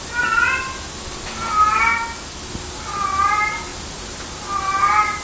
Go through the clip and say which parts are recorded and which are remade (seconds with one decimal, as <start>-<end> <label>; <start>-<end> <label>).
0.0-5.2 recorded